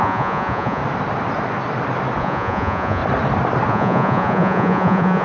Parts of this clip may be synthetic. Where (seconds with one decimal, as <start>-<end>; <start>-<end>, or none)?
0.0-0.8; 2.2-3.0; 3.7-5.2